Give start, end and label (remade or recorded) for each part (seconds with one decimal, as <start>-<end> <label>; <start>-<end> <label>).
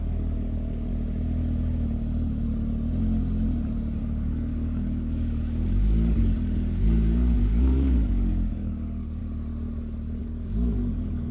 0.0-0.9 remade; 0.9-4.0 recorded; 4.0-9.2 remade; 9.2-10.2 recorded; 10.2-11.3 remade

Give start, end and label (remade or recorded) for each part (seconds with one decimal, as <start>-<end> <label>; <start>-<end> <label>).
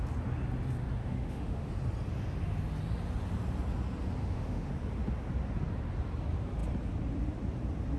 0.0-1.0 recorded; 1.0-1.7 remade; 1.7-4.2 recorded; 4.2-4.7 remade; 4.7-8.0 recorded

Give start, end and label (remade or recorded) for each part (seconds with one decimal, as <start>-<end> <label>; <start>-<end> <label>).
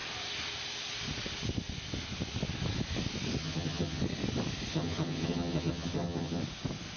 0.0-3.4 recorded; 3.4-4.0 remade; 4.0-4.7 recorded; 4.7-6.4 remade; 6.4-7.0 recorded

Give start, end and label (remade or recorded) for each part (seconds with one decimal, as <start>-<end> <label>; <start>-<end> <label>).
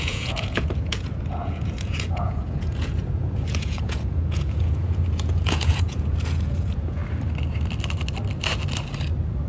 0.0-7.0 remade; 7.0-9.5 recorded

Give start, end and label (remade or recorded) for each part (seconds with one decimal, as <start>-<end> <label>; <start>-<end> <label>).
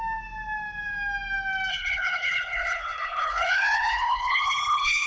0.0-1.7 recorded; 1.7-5.1 remade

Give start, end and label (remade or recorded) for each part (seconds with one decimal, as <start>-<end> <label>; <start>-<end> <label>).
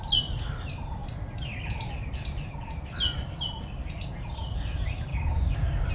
0.0-5.1 recorded; 5.1-5.9 remade